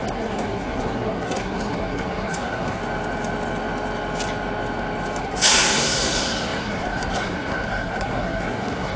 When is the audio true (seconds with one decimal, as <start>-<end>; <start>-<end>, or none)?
2.8-5.2

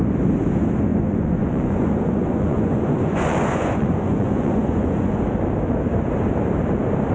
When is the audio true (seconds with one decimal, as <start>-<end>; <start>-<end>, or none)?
0.0-0.9; 5.2-7.1

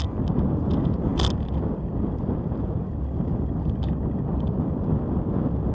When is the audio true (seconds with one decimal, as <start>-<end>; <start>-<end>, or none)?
0.0-5.7